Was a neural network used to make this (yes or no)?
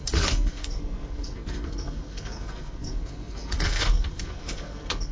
yes